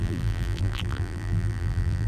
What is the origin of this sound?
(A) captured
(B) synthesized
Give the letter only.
B